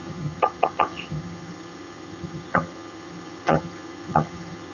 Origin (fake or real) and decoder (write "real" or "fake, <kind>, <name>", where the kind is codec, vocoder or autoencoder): fake, vocoder, HiFi-GAN